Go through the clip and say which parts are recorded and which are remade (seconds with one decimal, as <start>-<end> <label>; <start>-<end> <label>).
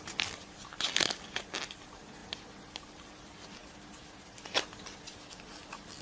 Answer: 0.0-6.0 recorded